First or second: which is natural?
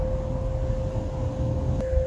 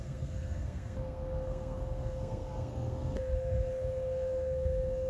first